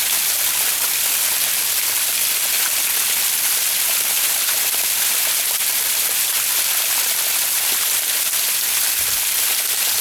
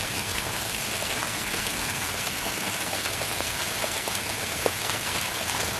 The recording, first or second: first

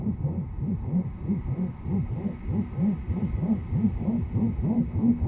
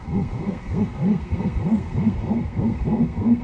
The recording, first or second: first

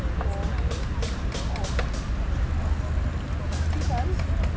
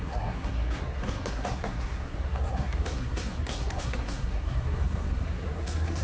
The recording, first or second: first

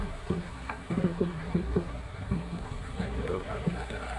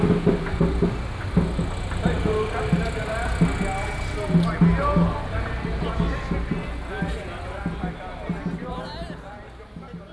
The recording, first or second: second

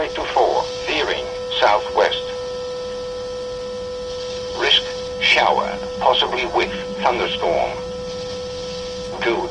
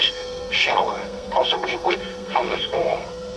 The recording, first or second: first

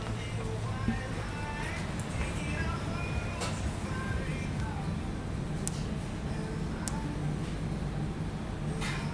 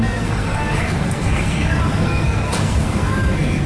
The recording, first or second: first